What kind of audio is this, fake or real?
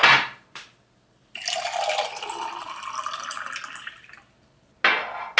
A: real